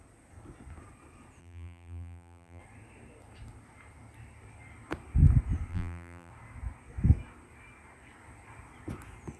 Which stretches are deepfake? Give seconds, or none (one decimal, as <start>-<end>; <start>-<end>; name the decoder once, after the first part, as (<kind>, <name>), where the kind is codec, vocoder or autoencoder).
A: 1.4-2.6 (vocoder, BigVGAN v2); 5.7-6.3